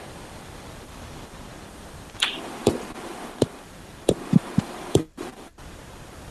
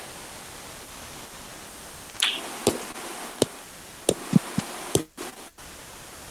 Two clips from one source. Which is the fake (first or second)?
first